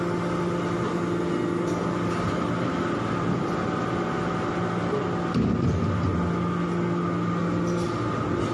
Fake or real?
real